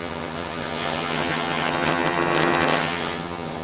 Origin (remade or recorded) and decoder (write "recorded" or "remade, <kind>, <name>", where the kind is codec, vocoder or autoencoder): remade, vocoder, HiFi-GAN